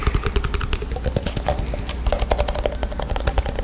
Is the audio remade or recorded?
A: recorded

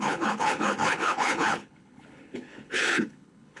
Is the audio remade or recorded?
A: remade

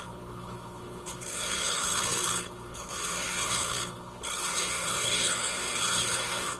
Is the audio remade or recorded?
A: remade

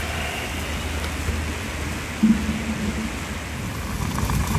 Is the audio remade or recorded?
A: recorded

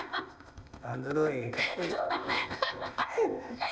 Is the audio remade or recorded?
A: remade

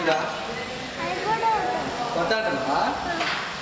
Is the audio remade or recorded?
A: recorded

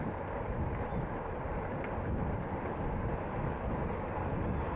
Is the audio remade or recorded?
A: remade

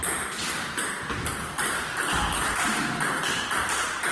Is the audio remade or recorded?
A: remade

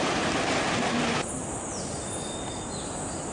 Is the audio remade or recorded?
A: recorded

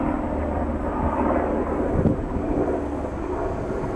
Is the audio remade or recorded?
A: recorded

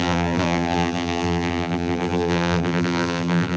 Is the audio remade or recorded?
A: remade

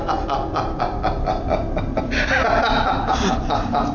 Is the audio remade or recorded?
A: recorded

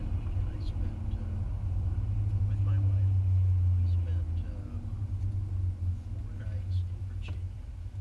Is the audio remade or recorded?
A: recorded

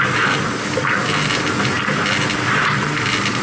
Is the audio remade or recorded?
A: recorded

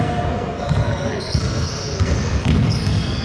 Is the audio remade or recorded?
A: remade